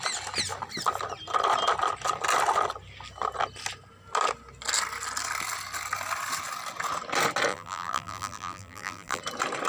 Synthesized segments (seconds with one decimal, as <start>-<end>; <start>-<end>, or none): 7.5-9.2